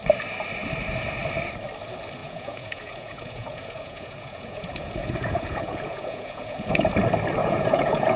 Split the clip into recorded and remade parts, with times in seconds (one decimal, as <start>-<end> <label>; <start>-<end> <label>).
0.0-2.2 recorded; 2.2-6.9 remade; 6.9-7.4 recorded; 7.4-8.2 remade